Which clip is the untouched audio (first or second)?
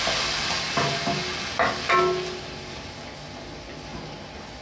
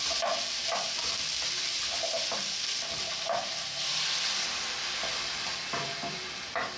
first